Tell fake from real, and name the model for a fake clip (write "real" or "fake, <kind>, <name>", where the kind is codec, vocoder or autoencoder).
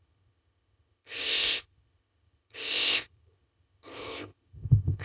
fake, codec, ZipCodec